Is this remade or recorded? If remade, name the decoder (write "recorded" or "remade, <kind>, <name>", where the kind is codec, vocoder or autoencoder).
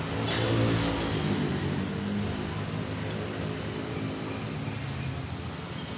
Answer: recorded